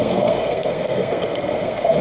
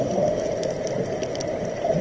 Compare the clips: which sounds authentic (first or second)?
second